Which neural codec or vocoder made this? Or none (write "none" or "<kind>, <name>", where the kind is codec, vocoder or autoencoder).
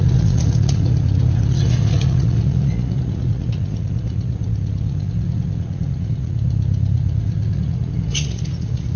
vocoder, Vocos